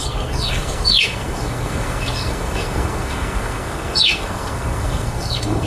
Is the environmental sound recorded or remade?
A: remade